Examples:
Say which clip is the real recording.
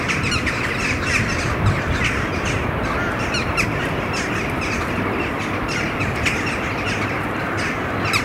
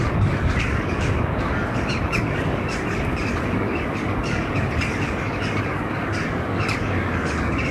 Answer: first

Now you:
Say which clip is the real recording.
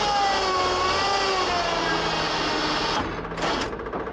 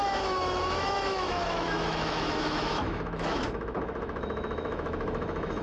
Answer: first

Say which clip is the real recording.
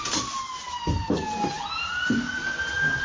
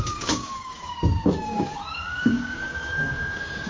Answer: first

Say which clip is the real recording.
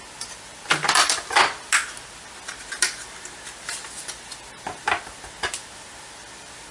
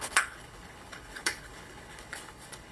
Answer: first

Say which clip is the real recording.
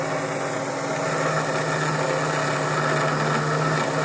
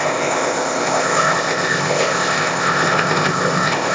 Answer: first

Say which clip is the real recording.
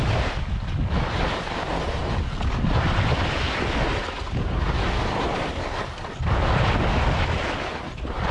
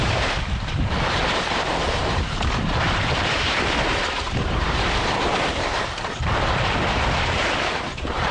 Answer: first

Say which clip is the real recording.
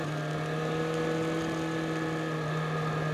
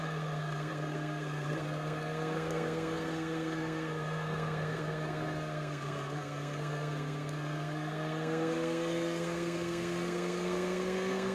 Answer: first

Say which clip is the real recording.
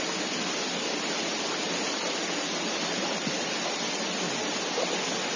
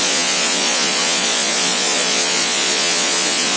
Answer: first